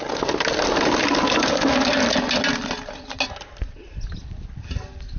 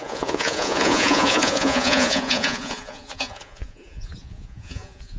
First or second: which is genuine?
first